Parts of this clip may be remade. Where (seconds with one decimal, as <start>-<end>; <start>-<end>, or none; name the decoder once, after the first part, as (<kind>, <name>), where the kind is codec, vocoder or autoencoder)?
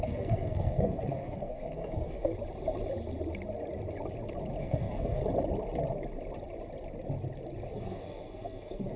0.0-2.3 (codec, SNAC); 4.6-5.2; 7.8-9.0